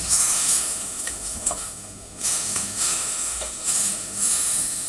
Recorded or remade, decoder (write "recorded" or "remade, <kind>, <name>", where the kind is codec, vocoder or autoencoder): remade, autoencoder, DAC-VAE